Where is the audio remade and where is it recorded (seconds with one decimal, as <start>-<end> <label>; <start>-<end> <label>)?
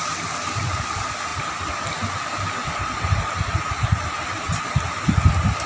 0.0-5.7 recorded